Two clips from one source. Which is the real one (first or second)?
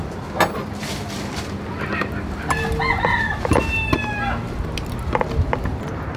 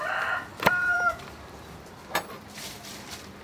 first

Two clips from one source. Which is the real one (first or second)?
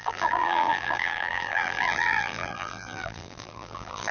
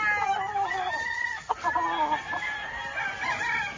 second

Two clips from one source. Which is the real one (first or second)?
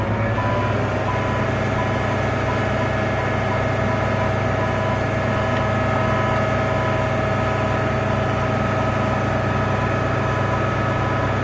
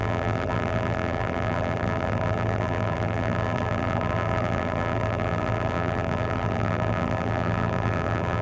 first